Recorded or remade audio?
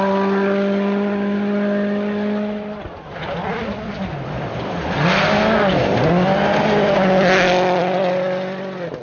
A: recorded